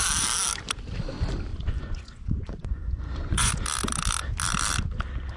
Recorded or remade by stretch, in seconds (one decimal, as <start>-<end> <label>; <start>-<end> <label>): 0.0-1.5 recorded; 1.5-3.5 remade; 3.5-5.4 recorded